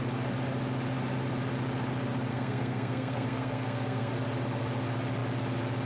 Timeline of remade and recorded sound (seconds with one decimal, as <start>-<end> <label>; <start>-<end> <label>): 0.0-2.3 recorded; 2.3-4.1 remade; 4.1-5.9 recorded